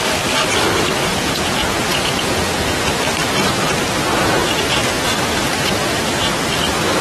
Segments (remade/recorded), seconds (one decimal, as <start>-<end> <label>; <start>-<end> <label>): 0.0-1.1 recorded; 1.1-3.0 remade; 3.0-7.0 recorded